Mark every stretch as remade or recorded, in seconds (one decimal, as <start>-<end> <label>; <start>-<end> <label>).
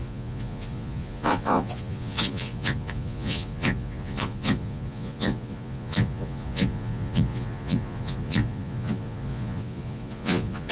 0.0-10.7 remade